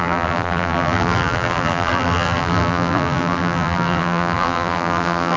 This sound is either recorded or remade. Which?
remade